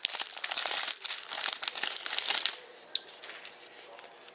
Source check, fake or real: real